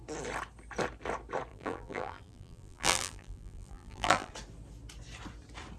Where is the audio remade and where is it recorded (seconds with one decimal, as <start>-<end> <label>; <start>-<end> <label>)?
0.0-1.5 recorded; 1.5-4.3 remade; 4.3-5.8 recorded